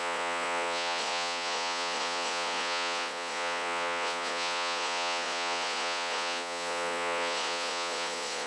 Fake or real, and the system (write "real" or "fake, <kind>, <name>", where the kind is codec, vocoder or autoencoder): fake, vocoder, Vocos